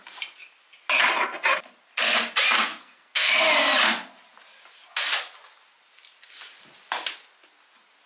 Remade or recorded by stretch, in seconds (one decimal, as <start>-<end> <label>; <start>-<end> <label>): 0.0-2.7 recorded; 2.7-3.3 remade; 3.3-8.1 recorded